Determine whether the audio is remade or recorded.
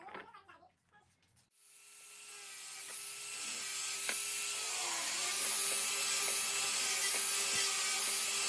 recorded